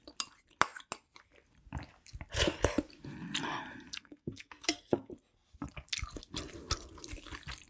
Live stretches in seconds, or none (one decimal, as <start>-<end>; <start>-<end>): 0.0-3.9; 5.1-7.7